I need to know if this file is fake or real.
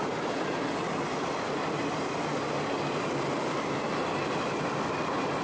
real